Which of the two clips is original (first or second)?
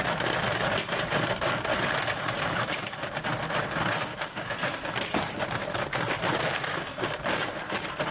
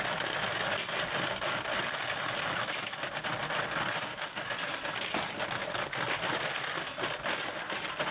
second